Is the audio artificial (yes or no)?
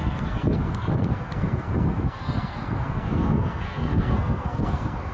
yes